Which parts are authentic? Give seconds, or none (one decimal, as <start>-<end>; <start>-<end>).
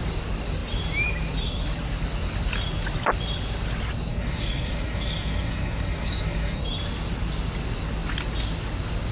0.0-4.1; 6.6-9.1